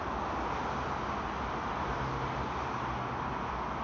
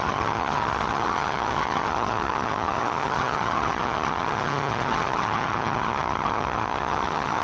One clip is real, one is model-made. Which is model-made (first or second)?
second